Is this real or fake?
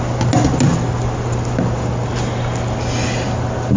real